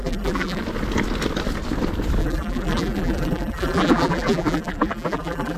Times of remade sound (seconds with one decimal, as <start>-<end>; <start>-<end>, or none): 0.0-0.6; 2.2-5.6